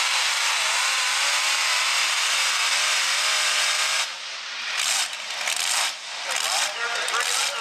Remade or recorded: recorded